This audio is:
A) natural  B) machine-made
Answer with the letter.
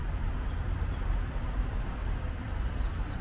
B